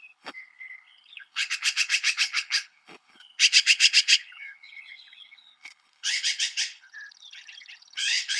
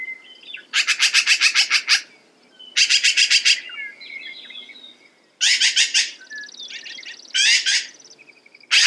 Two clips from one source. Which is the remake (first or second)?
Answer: first